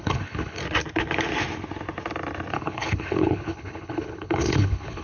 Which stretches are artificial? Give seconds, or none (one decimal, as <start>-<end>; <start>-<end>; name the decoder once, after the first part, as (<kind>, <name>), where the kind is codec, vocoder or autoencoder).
0.0-0.6 (codec, HILCodec); 2.5-5.0